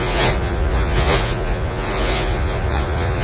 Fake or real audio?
fake